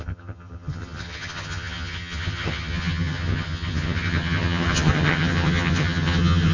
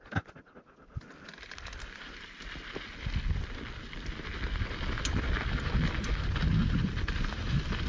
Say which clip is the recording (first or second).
second